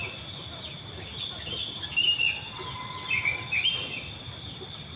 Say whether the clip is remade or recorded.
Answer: recorded